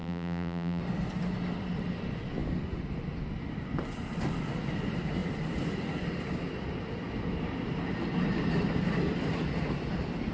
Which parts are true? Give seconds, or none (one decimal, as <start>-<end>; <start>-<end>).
0.8-10.3